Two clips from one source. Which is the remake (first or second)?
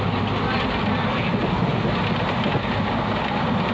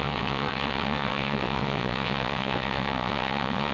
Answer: second